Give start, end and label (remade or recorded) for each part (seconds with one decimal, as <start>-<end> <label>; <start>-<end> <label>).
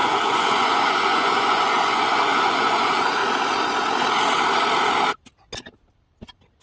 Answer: 0.0-3.2 remade; 3.2-6.6 recorded